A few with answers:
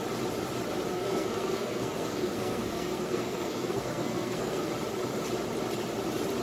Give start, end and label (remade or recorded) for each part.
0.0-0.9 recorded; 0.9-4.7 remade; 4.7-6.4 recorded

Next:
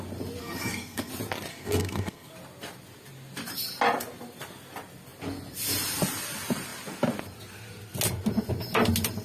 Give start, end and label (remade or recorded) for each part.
0.0-0.4 recorded; 0.4-1.1 remade; 1.1-1.5 recorded; 1.5-2.3 remade; 2.3-9.2 recorded

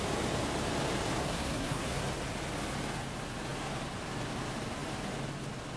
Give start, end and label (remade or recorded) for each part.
0.0-1.2 recorded; 1.2-2.0 remade; 2.0-5.8 recorded

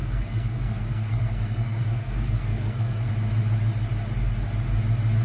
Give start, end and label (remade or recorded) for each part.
0.0-3.1 remade; 3.1-5.2 recorded